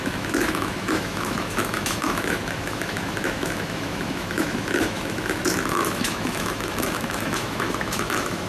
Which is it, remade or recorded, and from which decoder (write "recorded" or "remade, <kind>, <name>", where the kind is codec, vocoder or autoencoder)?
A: remade, autoencoder, DAC-VAE